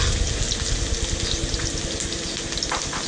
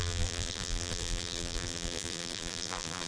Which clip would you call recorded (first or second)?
first